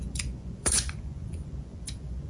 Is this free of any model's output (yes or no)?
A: no